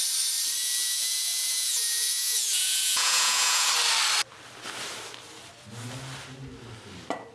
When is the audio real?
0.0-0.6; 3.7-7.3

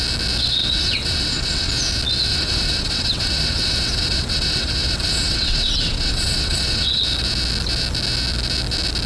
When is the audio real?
0.0-0.6; 1.7-2.3; 7.0-9.1

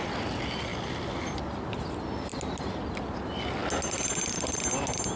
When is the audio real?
0.0-5.2

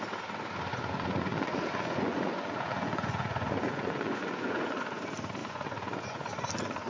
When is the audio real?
0.0-0.7; 4.8-5.4; 6.3-6.9

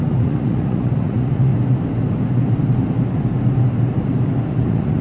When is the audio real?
1.5-4.5

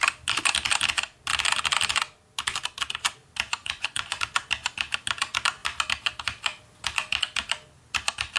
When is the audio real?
0.0-3.6; 4.2-8.4

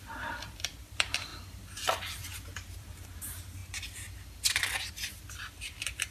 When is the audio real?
1.3-2.1; 3.6-4.9

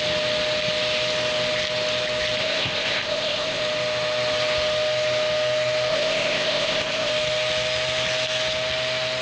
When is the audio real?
0.0-2.4; 3.6-5.9; 7.1-9.2